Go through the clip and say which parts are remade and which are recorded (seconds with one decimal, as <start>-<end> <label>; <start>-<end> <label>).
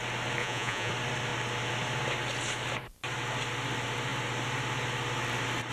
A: 0.0-0.4 recorded; 0.4-0.9 remade; 0.9-5.7 recorded